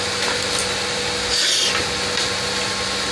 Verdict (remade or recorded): recorded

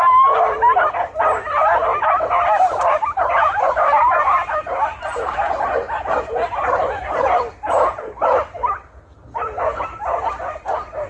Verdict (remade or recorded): recorded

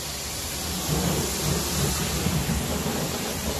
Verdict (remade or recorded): recorded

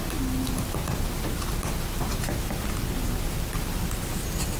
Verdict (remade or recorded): recorded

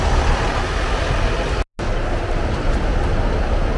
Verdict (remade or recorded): recorded